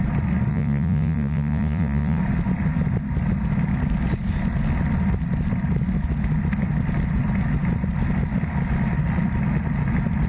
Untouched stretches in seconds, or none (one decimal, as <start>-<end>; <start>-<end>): 0.0-0.5; 2.2-10.3